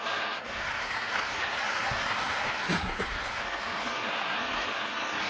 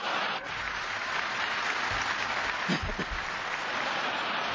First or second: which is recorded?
second